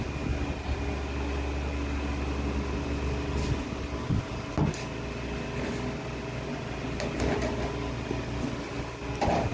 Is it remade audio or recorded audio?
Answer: recorded